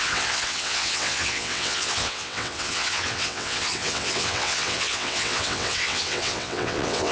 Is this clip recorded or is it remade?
remade